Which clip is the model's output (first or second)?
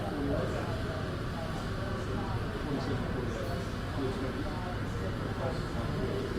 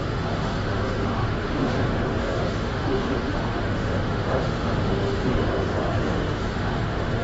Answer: second